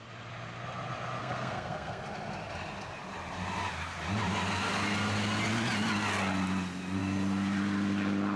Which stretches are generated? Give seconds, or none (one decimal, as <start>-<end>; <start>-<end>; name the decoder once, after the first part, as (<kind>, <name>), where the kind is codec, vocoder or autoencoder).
1.2-2.0 (codec, SNAC)

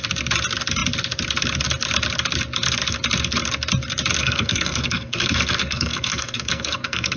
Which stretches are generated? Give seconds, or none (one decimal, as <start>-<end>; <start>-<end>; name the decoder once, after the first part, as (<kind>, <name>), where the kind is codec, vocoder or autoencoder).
4.2-7.2 (codec, SNAC)